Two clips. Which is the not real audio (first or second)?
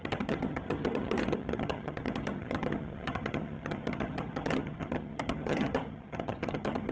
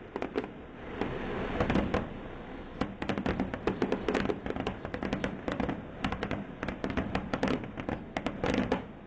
first